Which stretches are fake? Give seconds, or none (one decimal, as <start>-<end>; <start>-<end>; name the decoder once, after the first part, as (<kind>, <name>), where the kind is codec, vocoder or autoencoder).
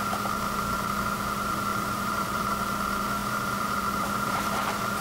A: 1.7-2.5 (vocoder, BigVGAN v2); 3.2-4.4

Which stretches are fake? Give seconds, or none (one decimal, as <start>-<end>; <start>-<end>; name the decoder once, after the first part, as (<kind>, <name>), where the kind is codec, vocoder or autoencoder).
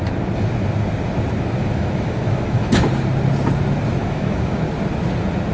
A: 1.6-2.7 (autoencoder, DAC-VAE); 4.0-4.6